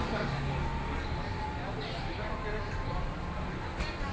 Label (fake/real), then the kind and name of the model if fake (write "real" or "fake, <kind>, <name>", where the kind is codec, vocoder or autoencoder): real